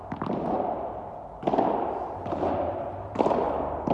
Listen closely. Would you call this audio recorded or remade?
recorded